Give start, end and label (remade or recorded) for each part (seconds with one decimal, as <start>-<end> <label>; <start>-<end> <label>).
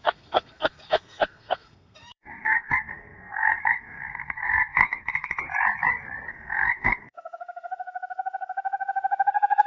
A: 0.0-5.4 remade; 5.4-6.3 recorded; 6.3-9.7 remade